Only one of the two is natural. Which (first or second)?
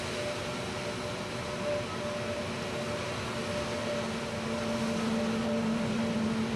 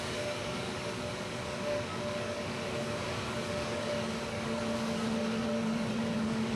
first